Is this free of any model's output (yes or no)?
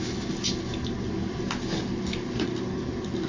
yes